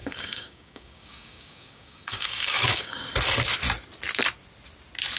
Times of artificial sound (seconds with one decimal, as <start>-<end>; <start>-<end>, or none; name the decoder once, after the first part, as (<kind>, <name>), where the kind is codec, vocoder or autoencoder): 0.0-3.0 (codec, DAC)